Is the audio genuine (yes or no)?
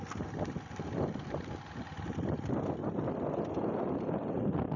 yes